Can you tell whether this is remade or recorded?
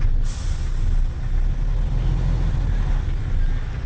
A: recorded